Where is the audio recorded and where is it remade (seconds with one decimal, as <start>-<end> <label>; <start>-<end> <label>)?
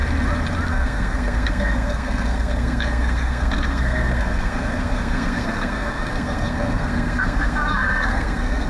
0.0-0.7 recorded; 0.7-8.7 remade